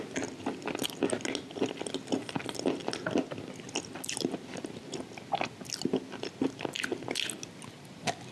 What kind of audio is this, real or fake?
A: real